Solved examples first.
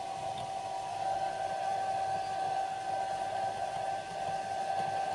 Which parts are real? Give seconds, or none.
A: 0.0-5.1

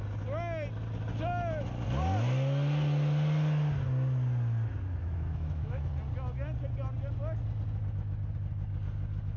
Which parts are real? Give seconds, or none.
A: 0.0-5.0; 5.9-9.4

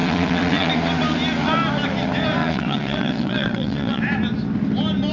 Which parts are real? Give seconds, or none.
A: 0.7-2.4; 4.0-5.1

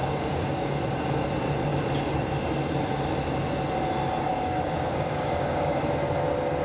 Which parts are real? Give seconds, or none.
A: 0.8-4.3; 5.9-6.6

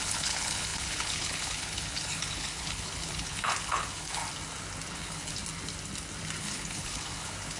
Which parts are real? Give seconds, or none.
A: 4.2-4.9; 5.4-6.4

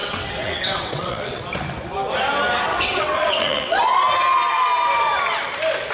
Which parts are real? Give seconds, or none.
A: 1.4-2.7; 3.8-5.9

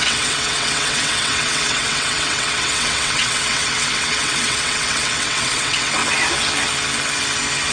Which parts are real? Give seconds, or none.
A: 6.0-7.7